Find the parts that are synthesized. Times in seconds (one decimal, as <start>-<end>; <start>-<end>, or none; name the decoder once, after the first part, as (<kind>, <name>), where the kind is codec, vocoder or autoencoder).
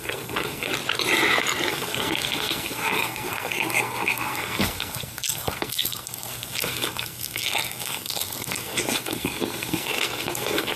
0.0-0.7 (codec, SNAC); 1.7-10.8